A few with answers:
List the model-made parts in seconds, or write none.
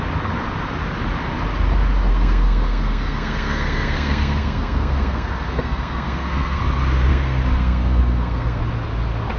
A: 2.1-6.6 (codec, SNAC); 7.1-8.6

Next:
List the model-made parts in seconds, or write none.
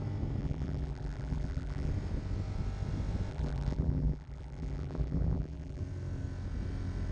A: 0.4-1.9 (vocoder, BigVGAN v2); 3.3-5.8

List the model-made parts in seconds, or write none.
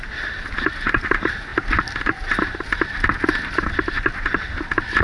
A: none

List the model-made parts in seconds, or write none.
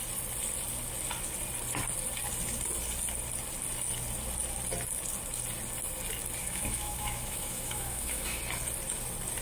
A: 6.4-8.4 (autoencoder, DAC-VAE)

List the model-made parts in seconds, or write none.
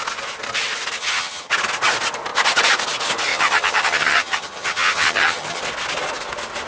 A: 1.0-1.5 (vocoder, HiFi-GAN); 3.3-5.6